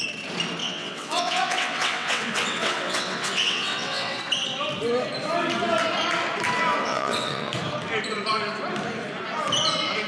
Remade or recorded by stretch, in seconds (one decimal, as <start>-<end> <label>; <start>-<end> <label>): 0.0-0.6 recorded; 0.6-4.2 remade; 4.2-6.8 recorded; 6.8-7.5 remade; 7.5-10.1 recorded